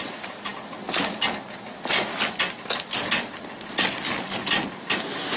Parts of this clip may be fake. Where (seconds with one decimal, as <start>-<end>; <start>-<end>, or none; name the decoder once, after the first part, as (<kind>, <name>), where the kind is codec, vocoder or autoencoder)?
none